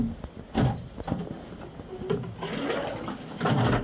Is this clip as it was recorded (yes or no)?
yes